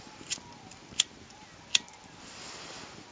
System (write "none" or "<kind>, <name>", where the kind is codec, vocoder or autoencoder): none